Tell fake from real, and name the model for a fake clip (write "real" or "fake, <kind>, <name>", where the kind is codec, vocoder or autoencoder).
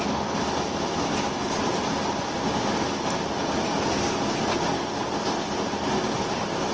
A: real